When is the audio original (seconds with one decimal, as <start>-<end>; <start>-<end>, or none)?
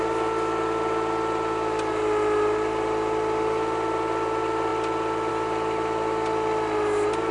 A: 0.0-7.3